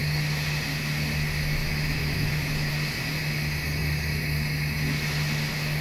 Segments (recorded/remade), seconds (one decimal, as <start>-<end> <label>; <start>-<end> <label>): 0.0-1.6 recorded; 1.6-2.7 remade; 2.7-5.8 recorded